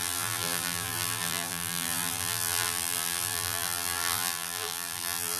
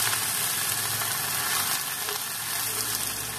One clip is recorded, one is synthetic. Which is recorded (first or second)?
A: second